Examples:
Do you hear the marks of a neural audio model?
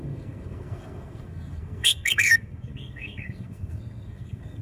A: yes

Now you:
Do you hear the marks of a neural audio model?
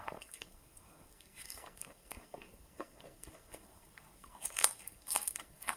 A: yes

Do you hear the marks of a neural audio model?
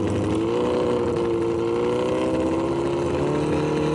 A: no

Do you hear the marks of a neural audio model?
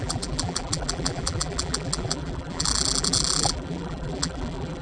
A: yes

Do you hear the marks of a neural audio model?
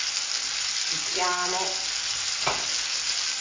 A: no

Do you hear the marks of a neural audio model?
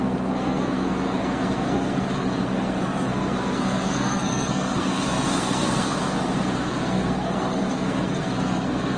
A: yes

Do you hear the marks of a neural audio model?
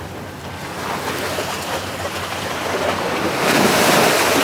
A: no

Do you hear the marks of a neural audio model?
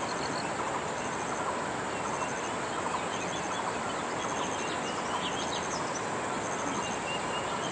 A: no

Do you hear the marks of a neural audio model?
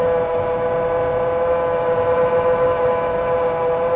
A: no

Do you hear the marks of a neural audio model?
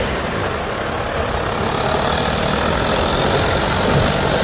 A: no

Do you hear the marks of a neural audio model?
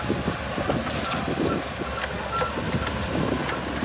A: no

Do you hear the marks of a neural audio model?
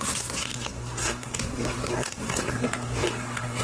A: yes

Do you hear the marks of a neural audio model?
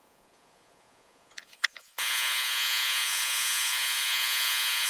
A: yes